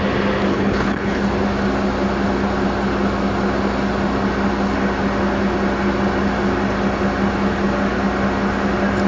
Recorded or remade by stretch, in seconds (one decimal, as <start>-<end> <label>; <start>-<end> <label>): 0.0-0.5 recorded; 0.5-1.2 remade; 1.2-9.1 recorded